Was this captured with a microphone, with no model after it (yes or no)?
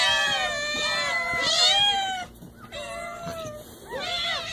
yes